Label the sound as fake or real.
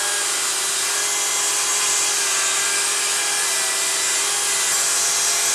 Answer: real